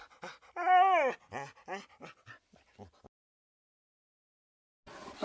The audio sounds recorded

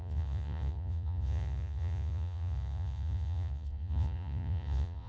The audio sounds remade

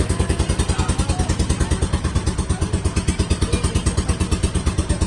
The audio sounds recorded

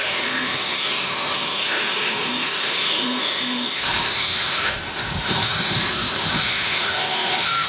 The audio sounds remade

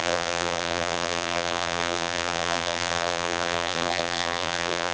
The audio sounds remade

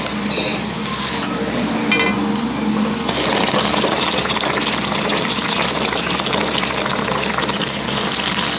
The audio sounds recorded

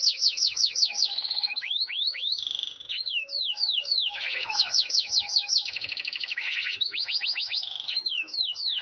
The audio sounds remade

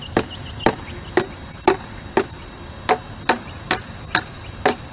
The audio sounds recorded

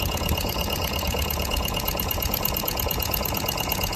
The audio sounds remade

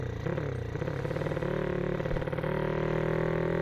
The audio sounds recorded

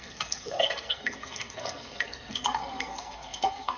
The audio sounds remade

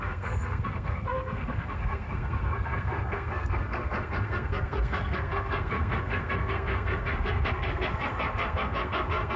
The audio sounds remade